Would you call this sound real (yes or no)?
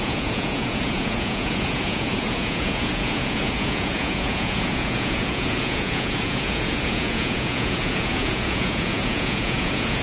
no